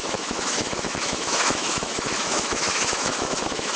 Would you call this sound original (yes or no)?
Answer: no